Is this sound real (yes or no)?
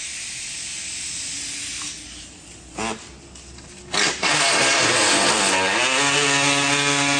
yes